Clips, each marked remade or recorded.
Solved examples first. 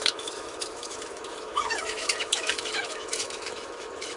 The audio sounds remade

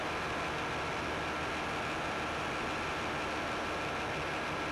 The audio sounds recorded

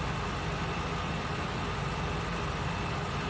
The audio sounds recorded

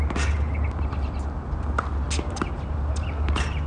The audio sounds recorded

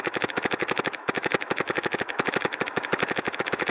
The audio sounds remade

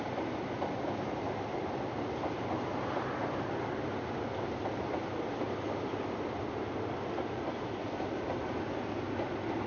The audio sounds recorded